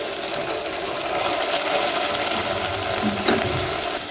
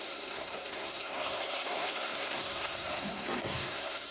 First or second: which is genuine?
first